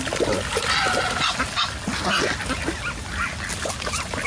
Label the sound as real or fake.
real